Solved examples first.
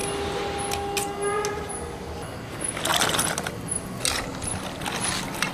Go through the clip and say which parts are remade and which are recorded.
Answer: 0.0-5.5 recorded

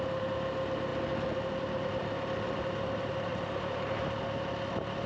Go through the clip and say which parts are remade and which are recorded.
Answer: 0.0-3.3 recorded; 3.3-4.2 remade; 4.2-5.1 recorded

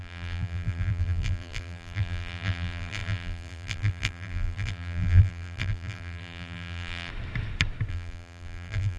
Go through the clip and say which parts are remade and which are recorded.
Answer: 0.0-7.1 remade; 7.1-7.9 recorded; 7.9-9.0 remade

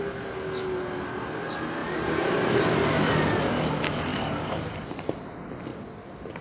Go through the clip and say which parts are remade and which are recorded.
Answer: 0.0-1.8 recorded; 1.8-3.4 remade; 3.4-4.1 recorded; 4.1-4.9 remade; 4.9-5.7 recorded; 5.7-6.4 remade

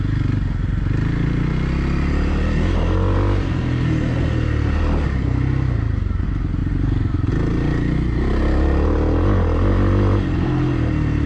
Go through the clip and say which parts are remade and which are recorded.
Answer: 0.0-6.6 recorded; 6.6-7.3 remade; 7.3-11.3 recorded

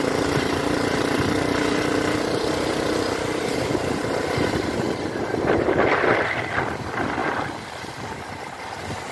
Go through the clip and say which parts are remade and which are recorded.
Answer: 0.0-9.1 remade